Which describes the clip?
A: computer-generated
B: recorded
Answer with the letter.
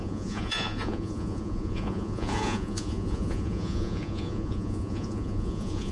A